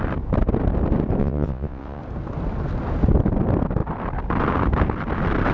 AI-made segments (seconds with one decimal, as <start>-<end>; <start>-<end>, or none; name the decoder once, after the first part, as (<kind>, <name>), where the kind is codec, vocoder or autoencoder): 1.2-2.0 (vocoder, WaveNeXt)